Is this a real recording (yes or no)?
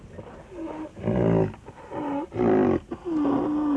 yes